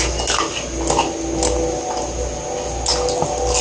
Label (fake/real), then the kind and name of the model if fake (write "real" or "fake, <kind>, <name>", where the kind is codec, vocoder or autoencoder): real